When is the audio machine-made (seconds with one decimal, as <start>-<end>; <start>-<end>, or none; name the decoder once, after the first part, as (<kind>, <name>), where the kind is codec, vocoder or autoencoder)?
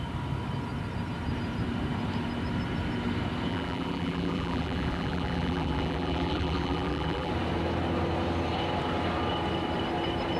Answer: 3.5-7.3 (vocoder, BigVGAN v2)